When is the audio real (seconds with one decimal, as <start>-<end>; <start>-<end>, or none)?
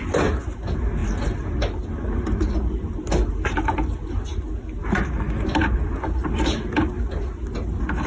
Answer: 0.0-8.1